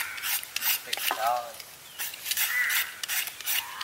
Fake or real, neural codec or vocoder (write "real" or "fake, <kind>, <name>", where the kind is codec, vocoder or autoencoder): real